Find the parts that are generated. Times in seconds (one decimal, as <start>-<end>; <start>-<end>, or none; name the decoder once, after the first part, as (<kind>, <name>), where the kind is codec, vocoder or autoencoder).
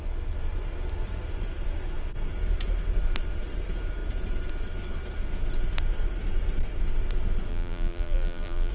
7.5-8.7 (vocoder, BigVGAN v2)